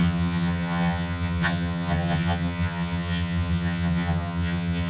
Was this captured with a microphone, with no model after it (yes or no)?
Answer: no